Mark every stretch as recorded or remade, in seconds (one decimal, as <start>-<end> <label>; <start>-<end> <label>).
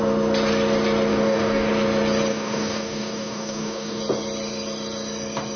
0.0-1.1 recorded; 1.1-1.7 remade; 1.7-2.3 recorded; 2.3-4.0 remade; 4.0-5.6 recorded